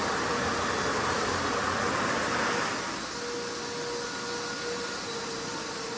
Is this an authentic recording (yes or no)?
yes